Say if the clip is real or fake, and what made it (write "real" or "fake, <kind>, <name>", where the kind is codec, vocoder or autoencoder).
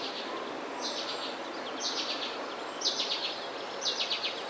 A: real